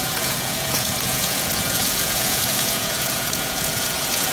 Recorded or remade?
remade